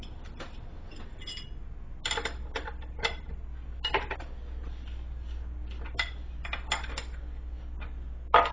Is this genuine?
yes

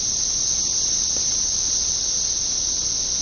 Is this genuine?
yes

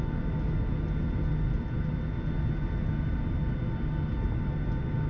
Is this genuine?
yes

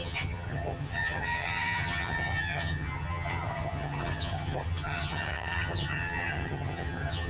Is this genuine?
no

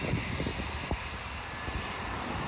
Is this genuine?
yes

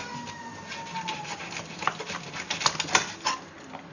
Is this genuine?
yes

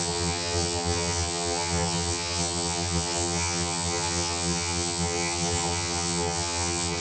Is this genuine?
no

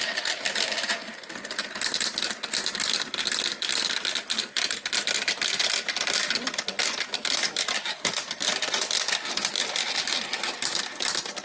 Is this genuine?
yes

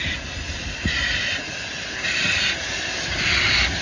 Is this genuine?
yes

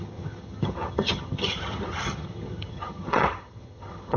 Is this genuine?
no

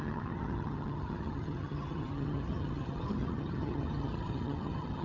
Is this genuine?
no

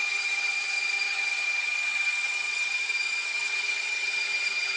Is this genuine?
no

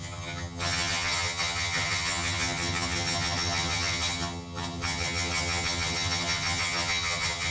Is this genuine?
no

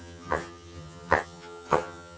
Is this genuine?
no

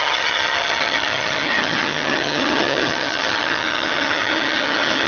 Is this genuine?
no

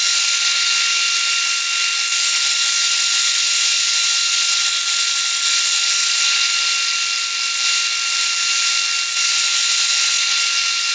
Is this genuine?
yes